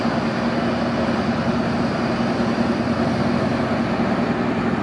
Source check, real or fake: real